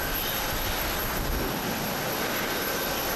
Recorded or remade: recorded